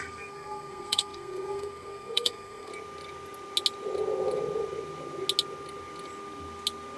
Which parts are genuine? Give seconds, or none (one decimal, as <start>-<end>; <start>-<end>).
2.7-7.0